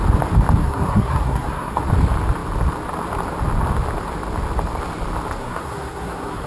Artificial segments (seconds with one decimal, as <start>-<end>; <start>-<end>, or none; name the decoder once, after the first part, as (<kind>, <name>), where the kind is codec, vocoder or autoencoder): 0.6-1.8 (codec, SNAC); 5.4-6.5